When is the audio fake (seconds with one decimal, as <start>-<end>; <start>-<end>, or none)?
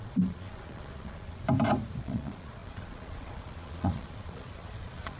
0.0-1.4; 2.0-5.2